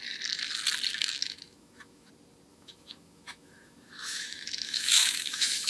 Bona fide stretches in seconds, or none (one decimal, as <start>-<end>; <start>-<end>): 0.0-0.9; 2.1-2.5